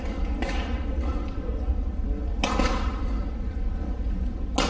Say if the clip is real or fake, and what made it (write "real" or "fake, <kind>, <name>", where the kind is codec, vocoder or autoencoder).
real